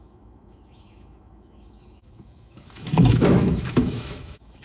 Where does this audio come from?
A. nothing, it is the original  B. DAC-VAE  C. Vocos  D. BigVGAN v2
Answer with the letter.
B